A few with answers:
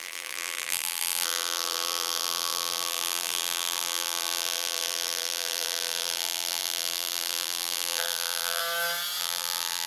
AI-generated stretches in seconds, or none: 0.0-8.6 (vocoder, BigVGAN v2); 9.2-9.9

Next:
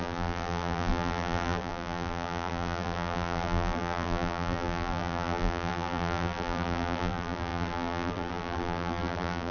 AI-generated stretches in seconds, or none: 0.0-9.5 (vocoder, BigVGAN v2)

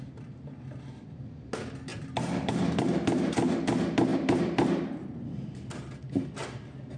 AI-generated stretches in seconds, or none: 1.9-2.8 (vocoder, BigVGAN v2); 4.1-5.5

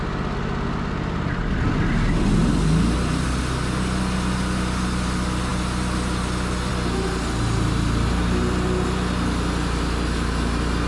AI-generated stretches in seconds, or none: none